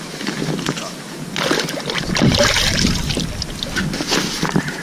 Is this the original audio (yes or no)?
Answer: yes